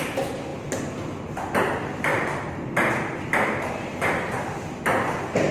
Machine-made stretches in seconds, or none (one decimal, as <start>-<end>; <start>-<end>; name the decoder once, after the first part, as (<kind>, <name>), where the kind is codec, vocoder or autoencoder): none